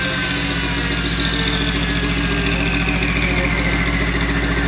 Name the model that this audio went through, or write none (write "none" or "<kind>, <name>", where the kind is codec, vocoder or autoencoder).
none